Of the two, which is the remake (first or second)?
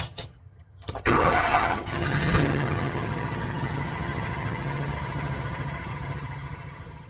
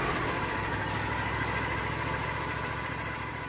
first